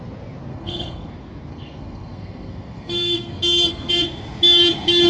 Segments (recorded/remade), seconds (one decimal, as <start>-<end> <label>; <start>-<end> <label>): 0.0-0.5 recorded; 0.5-1.1 remade; 1.1-1.5 recorded; 1.5-3.9 remade; 3.9-5.1 recorded